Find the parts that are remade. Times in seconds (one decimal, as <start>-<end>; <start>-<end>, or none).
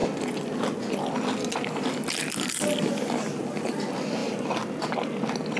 none